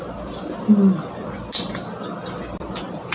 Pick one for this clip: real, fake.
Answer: real